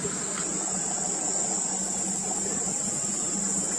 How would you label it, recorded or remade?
recorded